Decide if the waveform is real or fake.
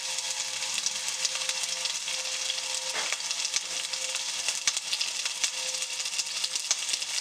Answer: real